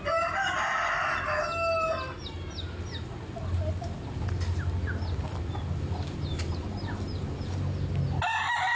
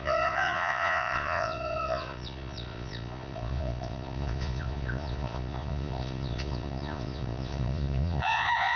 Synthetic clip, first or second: second